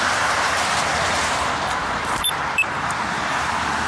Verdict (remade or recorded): remade